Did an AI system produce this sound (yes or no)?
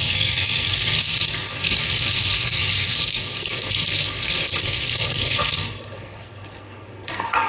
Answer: yes